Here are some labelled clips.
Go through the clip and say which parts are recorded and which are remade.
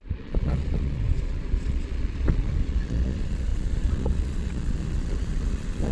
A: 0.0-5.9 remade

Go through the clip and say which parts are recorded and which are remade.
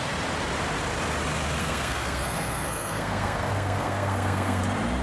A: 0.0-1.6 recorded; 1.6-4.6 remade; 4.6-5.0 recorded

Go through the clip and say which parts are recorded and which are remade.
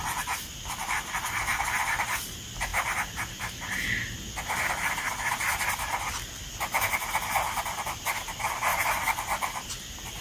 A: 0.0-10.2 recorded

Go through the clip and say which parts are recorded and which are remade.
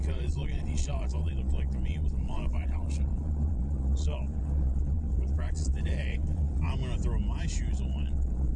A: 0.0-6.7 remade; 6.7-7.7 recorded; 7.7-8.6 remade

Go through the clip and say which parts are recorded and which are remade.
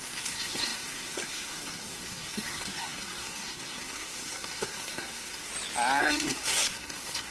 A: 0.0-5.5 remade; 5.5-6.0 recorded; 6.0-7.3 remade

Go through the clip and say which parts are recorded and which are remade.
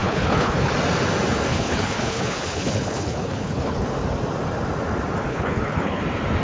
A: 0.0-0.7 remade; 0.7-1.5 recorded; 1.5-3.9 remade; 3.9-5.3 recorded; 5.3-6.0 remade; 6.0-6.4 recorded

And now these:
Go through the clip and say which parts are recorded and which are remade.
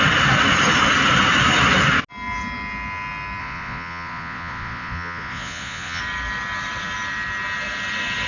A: 0.0-3.4 recorded; 3.4-6.0 remade; 6.0-8.3 recorded